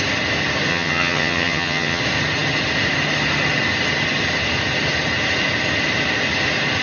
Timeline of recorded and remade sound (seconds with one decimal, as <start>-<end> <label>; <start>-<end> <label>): 0.0-0.7 recorded; 0.7-2.0 remade; 2.0-6.8 recorded